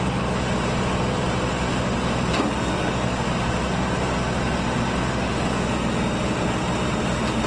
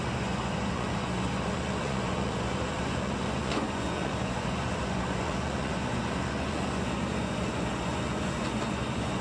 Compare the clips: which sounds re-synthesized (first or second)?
second